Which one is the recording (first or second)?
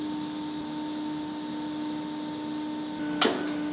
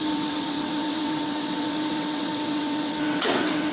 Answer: first